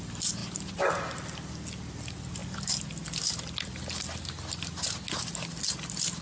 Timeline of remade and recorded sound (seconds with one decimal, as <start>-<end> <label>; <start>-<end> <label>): 0.0-0.4 recorded; 0.4-0.9 remade; 0.9-6.2 recorded